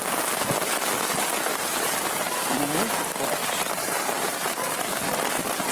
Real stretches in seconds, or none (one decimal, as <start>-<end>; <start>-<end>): 0.0-1.5; 2.6-3.4; 5.3-5.7